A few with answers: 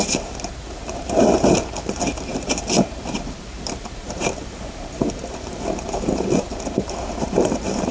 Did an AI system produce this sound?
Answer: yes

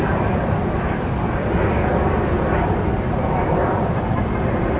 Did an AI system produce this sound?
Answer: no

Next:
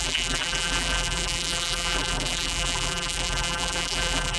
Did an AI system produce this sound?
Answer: yes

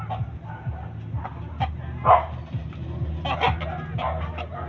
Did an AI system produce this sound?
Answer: no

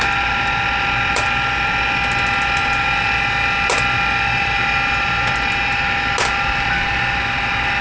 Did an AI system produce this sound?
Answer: no